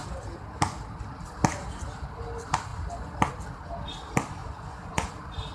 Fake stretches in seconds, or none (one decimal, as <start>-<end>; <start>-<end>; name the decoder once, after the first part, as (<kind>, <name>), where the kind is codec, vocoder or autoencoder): 4.4-5.1 (vocoder, Vocos)

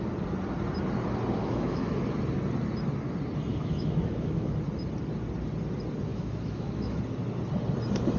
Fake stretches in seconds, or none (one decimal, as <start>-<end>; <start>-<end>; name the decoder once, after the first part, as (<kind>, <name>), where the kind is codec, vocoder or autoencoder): 1.4-1.9 (autoencoder, DAC-VAE); 3.5-4.6; 6.1-7.0

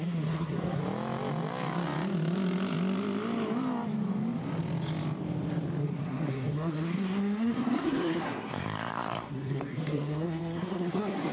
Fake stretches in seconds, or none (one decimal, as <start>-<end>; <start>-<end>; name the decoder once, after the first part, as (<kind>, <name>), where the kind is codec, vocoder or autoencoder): 0.0-0.8 (codec, SNAC); 5.8-11.3

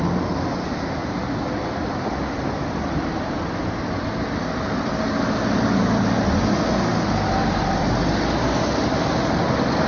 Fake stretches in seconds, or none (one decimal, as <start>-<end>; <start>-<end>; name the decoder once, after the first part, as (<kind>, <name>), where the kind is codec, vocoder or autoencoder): 1.0-3.3 (vocoder, BigVGAN v2); 6.9-7.6

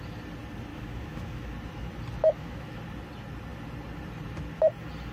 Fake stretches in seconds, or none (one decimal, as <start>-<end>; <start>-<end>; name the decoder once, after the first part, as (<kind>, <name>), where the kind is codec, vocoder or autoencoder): 0.7-1.5 (autoencoder, DAC-VAE); 2.2-2.8

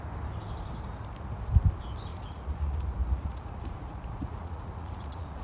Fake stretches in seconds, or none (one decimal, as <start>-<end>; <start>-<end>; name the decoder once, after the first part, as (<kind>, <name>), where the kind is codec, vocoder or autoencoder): 2.1-5.4 (vocoder, Vocos)